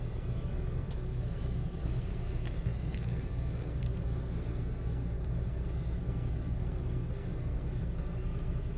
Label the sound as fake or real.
fake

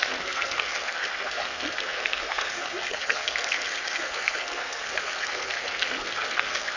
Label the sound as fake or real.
fake